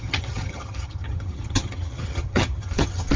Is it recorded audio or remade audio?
remade